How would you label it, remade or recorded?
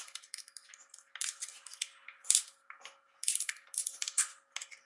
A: recorded